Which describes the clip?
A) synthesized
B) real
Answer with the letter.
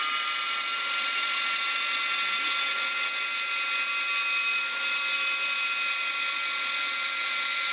B